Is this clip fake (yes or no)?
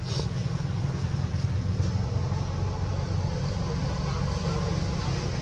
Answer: no